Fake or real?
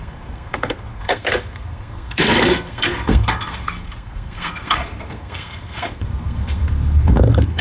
fake